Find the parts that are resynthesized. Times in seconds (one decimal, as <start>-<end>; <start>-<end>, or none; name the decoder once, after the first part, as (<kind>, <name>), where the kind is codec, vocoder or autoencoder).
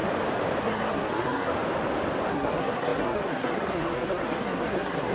0.6-1.5 (codec, SNAC); 2.3-5.1